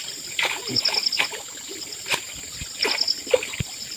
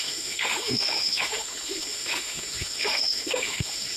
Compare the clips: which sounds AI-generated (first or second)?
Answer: second